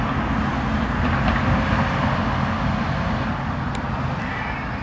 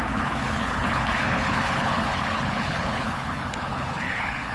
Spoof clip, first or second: second